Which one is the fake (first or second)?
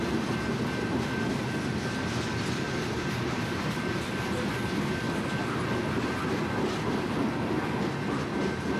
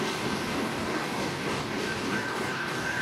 second